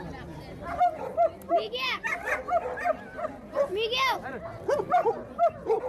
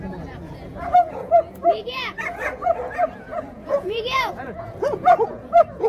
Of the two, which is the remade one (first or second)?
second